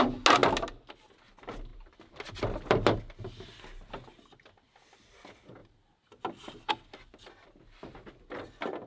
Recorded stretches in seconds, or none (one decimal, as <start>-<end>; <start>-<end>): 0.0-8.9